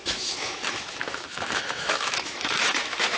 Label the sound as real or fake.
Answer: fake